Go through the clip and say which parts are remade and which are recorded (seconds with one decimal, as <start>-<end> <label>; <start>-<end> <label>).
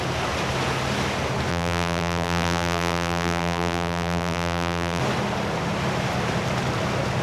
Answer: 0.0-1.5 recorded; 1.5-5.0 remade; 5.0-7.2 recorded